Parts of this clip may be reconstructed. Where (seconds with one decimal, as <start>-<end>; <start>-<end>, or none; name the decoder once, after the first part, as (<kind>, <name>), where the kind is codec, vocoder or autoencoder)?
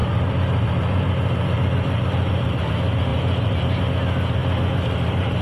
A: 0.0-2.7 (vocoder, BigVGAN v2); 3.1-3.8; 4.4-5.4